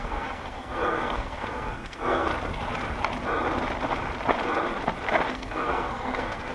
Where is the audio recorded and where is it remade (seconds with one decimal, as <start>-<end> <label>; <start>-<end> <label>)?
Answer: 0.0-2.3 remade; 2.3-5.3 recorded; 5.3-6.5 remade